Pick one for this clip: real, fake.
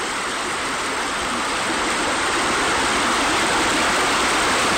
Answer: real